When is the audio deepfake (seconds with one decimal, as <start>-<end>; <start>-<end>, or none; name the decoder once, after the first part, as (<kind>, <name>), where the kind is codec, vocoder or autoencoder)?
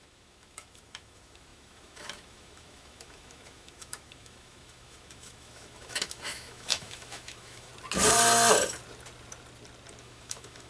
0.0-7.7 (autoencoder, DAC-VAE); 10.0-10.7